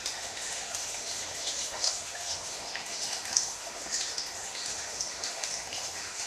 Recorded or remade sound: remade